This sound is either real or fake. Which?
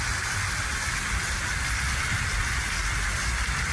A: real